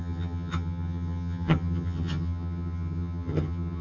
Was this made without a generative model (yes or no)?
no